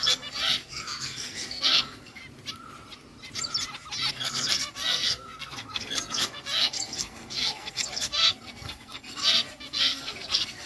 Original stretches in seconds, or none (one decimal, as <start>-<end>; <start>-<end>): 2.2-4.1